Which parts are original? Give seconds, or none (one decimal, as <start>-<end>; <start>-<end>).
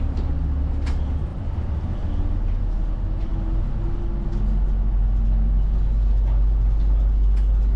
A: 0.0-7.8